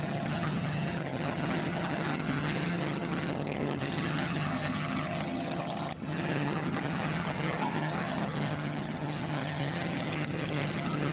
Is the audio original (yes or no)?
no